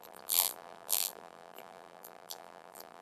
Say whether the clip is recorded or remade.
remade